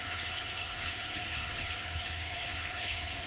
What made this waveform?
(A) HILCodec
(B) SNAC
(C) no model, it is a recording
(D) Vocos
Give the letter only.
A